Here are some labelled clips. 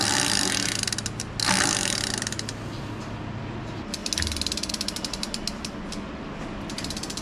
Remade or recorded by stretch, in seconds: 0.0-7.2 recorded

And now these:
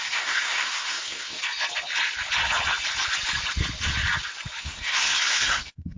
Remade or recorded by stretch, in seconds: 0.0-1.4 remade; 1.4-4.6 recorded; 4.6-6.0 remade

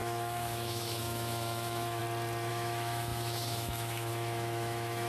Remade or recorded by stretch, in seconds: 0.0-2.0 remade; 2.0-2.5 recorded; 2.5-5.1 remade